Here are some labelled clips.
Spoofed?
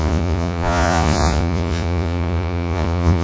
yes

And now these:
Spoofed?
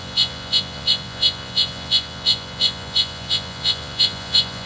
yes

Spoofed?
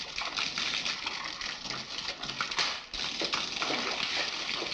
no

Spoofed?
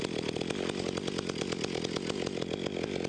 no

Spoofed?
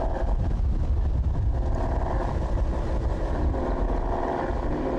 no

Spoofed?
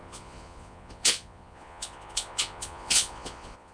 yes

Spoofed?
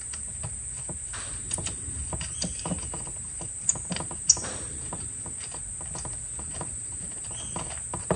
no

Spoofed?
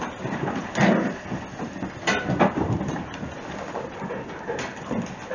no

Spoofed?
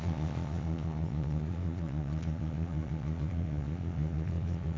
yes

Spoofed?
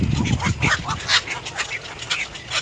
no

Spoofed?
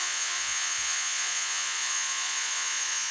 yes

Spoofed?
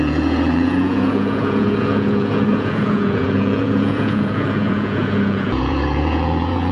yes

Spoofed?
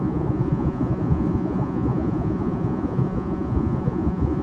yes